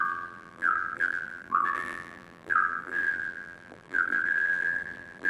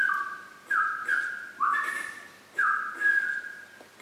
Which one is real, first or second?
second